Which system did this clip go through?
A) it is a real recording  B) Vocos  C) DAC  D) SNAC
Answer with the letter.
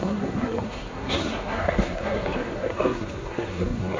D